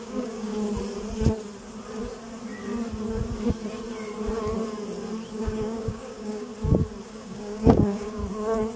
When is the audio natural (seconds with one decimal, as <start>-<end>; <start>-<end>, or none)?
0.5-5.3; 6.5-7.1; 8.2-8.8